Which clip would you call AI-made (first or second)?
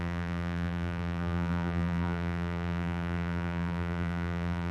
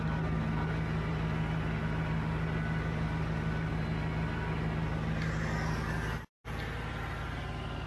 first